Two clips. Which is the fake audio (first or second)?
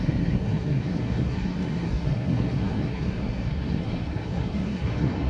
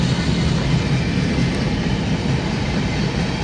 first